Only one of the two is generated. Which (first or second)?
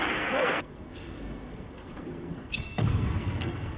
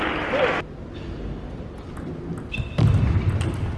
first